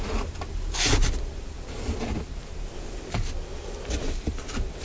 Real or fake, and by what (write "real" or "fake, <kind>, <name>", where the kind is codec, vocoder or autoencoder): real